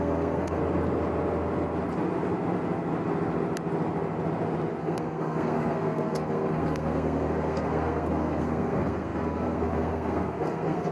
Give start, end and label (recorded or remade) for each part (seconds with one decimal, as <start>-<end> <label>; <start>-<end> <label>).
0.0-0.6 remade; 0.6-4.8 recorded; 4.8-10.9 remade